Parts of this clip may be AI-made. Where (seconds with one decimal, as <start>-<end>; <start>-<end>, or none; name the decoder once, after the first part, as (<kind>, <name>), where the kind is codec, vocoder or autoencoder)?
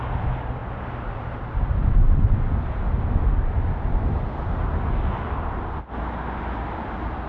0.6-2.3 (vocoder, BigVGAN v2)